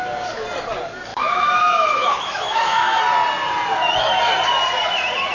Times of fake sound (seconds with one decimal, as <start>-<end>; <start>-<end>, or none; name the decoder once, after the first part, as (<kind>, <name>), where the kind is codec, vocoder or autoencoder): 1.1-3.0 (autoencoder, DAC-VAE)